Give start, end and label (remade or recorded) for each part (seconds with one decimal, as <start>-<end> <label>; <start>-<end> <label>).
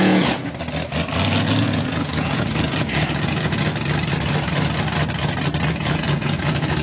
0.0-0.4 remade; 0.4-1.6 recorded; 1.6-3.7 remade; 3.7-5.7 recorded; 5.7-6.8 remade